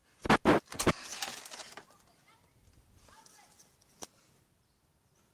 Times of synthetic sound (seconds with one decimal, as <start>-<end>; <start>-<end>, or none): none